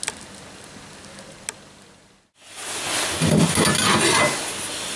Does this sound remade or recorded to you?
recorded